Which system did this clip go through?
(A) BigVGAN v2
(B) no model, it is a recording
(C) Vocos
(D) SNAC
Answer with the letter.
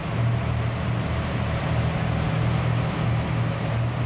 B